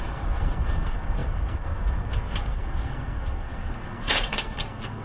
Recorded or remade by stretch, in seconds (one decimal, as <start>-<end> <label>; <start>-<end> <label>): 0.0-5.0 remade